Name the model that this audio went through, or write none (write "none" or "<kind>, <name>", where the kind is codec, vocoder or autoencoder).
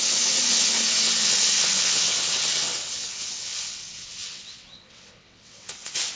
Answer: vocoder, WaveNeXt